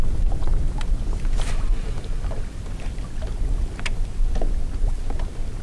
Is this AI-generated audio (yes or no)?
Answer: no